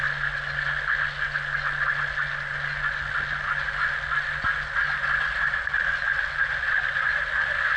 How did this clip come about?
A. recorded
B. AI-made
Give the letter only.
A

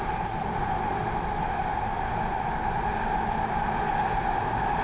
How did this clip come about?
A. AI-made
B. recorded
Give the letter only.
B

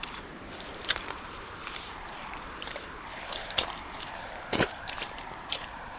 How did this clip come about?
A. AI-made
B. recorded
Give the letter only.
A